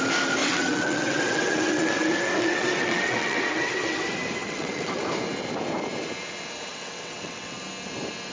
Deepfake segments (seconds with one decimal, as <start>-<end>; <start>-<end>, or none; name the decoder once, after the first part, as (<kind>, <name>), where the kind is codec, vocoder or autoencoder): 0.4-4.0 (vocoder, WaveNeXt); 4.4-5.0; 6.7-7.6